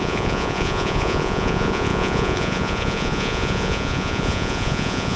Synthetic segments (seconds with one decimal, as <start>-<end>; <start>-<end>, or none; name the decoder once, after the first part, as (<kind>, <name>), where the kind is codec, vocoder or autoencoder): 0.0-5.2 (vocoder, Vocos)